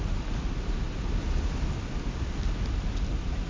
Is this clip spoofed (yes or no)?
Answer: no